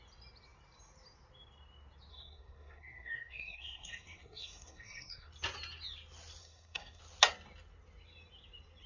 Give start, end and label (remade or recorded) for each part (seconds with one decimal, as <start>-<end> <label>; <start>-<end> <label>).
0.0-2.1 recorded; 2.1-5.3 remade; 5.3-6.4 recorded; 6.4-7.0 remade; 7.0-8.9 recorded